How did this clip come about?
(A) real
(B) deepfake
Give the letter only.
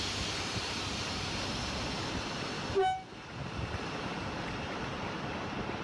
A